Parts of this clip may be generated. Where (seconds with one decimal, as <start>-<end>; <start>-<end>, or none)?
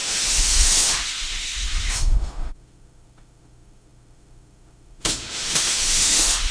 0.0-6.5